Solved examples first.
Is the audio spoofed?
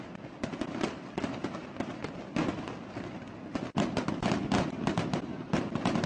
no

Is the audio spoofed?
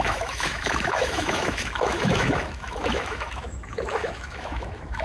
yes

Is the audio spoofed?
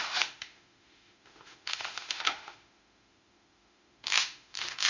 yes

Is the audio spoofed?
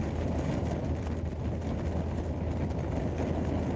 no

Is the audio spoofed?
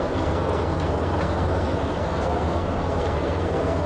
yes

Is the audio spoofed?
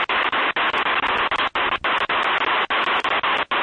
no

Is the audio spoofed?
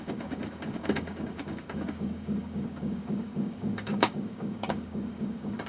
yes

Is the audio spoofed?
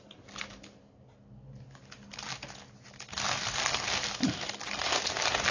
no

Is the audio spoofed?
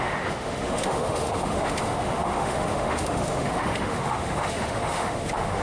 yes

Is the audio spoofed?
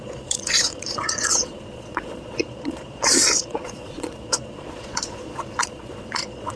yes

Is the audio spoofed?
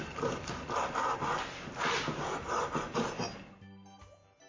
no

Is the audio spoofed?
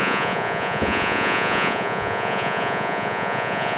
yes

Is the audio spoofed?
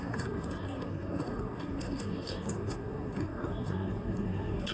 yes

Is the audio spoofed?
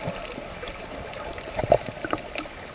no